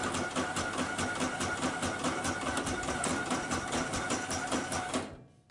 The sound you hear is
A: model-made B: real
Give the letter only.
B